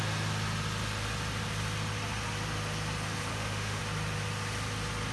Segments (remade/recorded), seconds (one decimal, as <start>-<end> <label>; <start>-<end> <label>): 0.0-3.3 recorded; 3.3-3.8 remade; 3.8-5.1 recorded